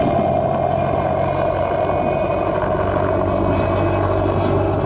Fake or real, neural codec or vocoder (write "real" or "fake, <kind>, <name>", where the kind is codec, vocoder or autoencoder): real